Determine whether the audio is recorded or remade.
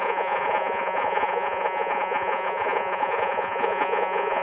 remade